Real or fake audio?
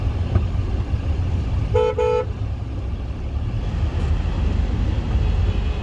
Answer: real